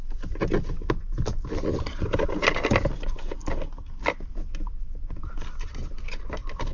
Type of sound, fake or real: real